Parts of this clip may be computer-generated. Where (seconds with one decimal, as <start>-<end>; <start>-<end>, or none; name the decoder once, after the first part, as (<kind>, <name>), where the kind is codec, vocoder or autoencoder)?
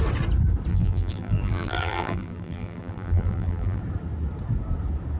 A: 0.7-3.8 (vocoder, BigVGAN v2)